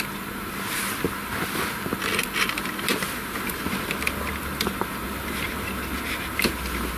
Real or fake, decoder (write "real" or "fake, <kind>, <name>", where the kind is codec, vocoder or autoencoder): real